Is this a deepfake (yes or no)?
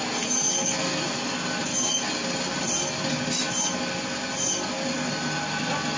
no